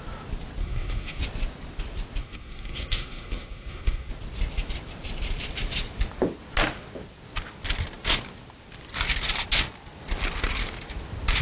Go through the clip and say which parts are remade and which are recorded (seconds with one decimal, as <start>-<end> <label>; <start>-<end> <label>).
0.0-0.6 recorded; 0.6-1.2 remade; 1.2-2.2 recorded; 2.2-4.1 remade; 4.1-11.4 recorded

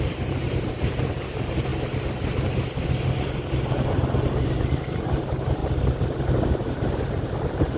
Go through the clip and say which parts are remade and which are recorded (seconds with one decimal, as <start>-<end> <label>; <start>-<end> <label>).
0.0-1.7 remade; 1.7-3.1 recorded; 3.1-4.0 remade; 4.0-4.6 recorded; 4.6-5.6 remade; 5.6-6.7 recorded; 6.7-7.8 remade